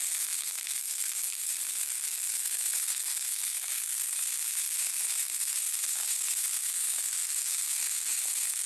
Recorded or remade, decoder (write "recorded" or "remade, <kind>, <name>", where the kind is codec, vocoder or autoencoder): remade, codec, SNAC